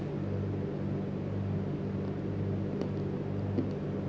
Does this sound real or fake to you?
real